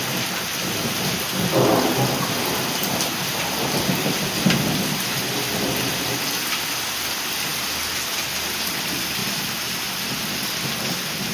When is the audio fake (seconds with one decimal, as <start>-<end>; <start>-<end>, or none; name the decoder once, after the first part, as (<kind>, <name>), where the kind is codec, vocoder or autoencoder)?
0.6-1.6 (vocoder, BigVGAN v2)